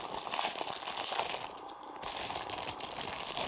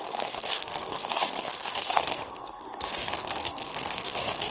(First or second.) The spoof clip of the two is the second